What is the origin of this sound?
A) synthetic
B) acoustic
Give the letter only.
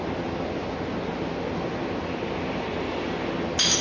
B